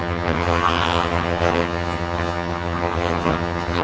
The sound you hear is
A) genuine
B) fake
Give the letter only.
B